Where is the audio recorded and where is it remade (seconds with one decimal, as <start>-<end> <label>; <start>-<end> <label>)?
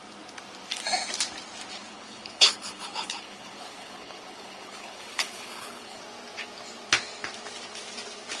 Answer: 0.0-1.7 recorded; 1.7-6.0 remade; 6.0-8.4 recorded